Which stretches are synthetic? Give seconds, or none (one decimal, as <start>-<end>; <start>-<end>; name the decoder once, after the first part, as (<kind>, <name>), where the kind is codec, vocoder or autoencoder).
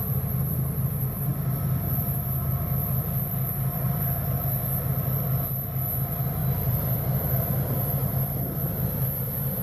6.4-7.1 (vocoder, BigVGAN v2); 8.0-9.6